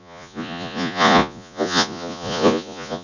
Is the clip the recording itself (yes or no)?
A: no